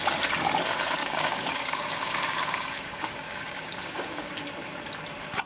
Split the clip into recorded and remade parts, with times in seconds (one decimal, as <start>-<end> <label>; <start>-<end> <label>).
0.0-1.0 recorded; 1.0-4.3 remade; 4.3-5.5 recorded